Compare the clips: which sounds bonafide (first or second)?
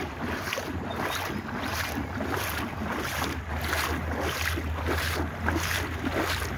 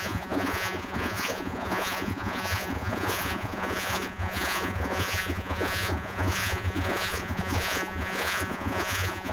first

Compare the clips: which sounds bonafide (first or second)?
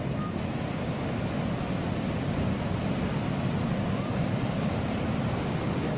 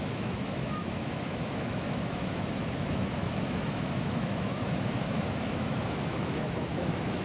first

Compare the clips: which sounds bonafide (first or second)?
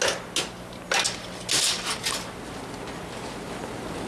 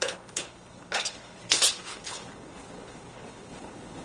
first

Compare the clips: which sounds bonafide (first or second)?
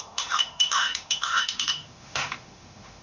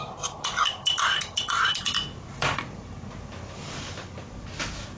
second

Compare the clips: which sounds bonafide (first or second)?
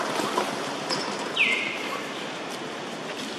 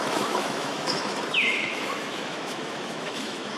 first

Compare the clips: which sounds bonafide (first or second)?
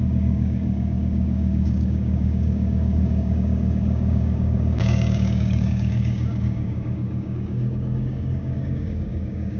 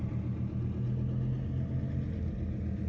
second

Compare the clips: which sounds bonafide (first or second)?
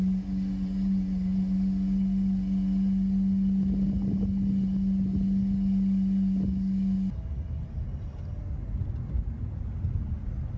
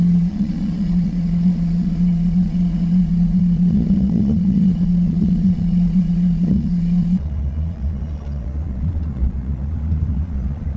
first